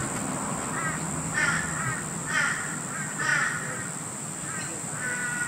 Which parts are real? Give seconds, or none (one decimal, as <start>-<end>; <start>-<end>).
0.0-2.9